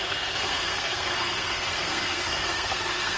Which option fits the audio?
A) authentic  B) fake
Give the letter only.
B